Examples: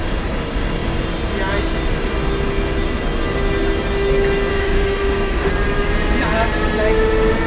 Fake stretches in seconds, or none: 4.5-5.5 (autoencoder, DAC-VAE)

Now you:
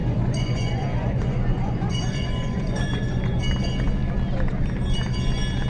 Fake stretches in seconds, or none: 0.0-3.4 (vocoder, Vocos)

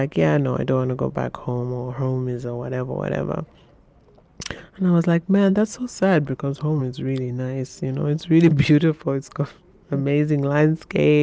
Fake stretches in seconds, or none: none

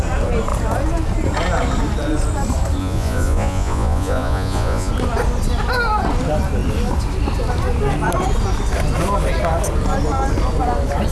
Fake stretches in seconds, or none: 2.8-4.9 (vocoder, Vocos)